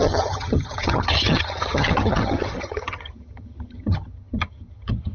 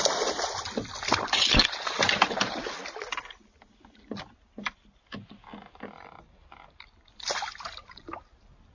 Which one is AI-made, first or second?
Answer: first